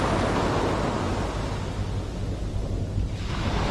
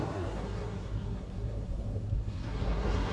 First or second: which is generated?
second